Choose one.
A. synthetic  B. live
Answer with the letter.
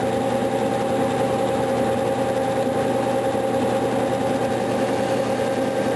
B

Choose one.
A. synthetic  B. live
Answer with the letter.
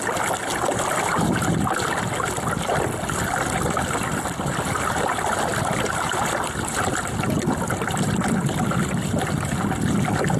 B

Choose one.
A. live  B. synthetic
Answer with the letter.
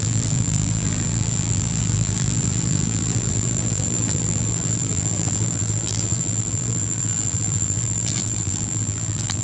B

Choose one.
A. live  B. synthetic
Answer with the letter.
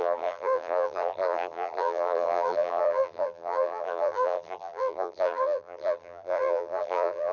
B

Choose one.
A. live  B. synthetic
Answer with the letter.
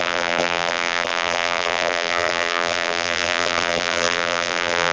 B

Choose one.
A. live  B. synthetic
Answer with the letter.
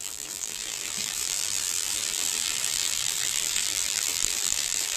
B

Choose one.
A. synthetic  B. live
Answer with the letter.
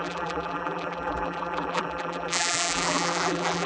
A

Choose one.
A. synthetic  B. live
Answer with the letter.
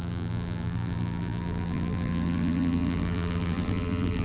A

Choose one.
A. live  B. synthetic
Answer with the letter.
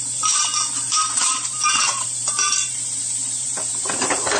B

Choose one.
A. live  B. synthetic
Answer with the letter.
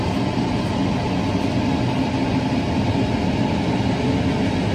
A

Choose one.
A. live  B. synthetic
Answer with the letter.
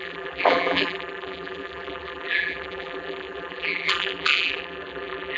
B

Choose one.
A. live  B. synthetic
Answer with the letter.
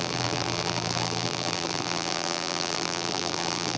B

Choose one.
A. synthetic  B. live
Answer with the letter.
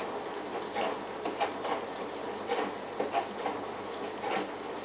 B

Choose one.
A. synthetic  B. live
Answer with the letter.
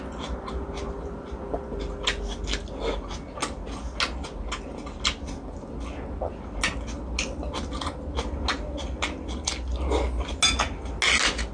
B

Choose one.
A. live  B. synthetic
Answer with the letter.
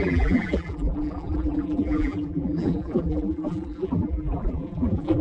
B